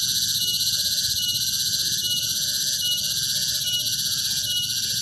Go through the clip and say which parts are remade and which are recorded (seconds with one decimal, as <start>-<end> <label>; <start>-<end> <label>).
0.0-5.0 recorded